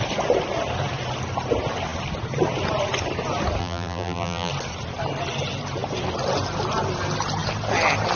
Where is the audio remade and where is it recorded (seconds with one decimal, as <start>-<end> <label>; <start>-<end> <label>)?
0.0-3.6 recorded; 3.6-4.5 remade; 4.5-8.2 recorded